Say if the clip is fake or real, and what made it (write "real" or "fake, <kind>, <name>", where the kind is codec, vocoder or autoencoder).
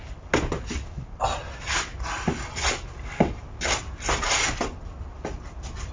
real